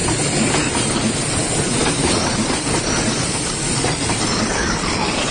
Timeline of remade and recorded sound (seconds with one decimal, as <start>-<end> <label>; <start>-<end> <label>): 0.0-5.3 recorded